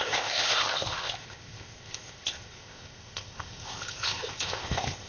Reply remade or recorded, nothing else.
remade